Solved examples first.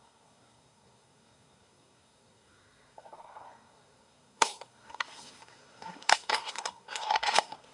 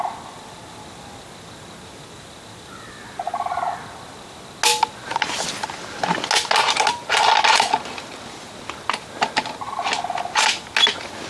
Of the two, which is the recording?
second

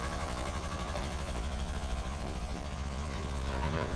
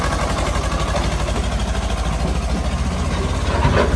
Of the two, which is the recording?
second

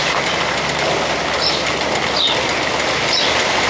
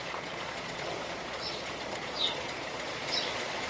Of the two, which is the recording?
first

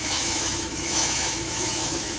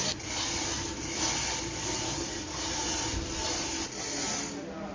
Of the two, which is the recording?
second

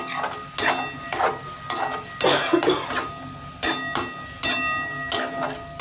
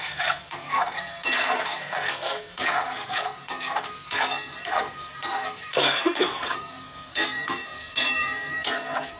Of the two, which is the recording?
first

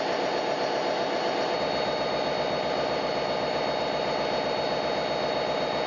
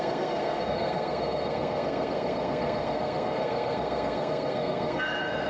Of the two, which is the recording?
first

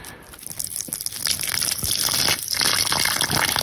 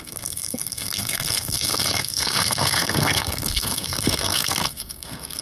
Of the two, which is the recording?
first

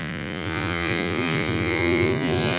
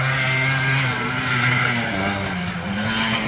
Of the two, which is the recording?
second